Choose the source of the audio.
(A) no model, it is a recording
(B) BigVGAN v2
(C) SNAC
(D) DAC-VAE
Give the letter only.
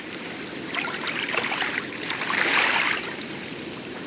B